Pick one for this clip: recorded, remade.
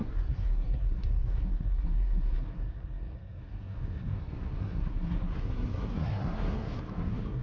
remade